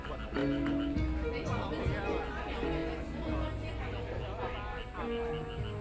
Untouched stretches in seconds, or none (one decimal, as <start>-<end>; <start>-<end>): 0.0-5.8